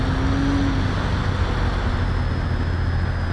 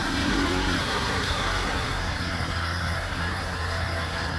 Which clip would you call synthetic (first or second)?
second